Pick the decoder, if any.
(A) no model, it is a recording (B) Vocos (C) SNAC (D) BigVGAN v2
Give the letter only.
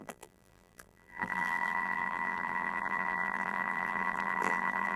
D